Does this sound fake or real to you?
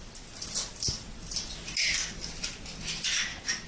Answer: real